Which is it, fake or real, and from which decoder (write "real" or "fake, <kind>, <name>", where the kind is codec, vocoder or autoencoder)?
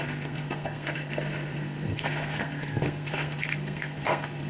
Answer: fake, codec, SNAC